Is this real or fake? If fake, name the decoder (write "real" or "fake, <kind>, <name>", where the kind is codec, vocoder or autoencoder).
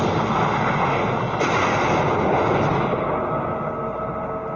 real